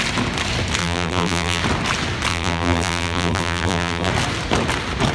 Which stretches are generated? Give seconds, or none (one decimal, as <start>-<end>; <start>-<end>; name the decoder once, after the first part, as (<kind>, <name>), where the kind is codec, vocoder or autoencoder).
0.8-1.6 (vocoder, BigVGAN v2); 2.3-4.1